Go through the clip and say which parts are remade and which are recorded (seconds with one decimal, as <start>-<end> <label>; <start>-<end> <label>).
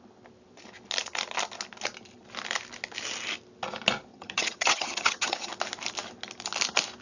0.0-4.1 recorded; 4.1-5.5 remade; 5.5-7.0 recorded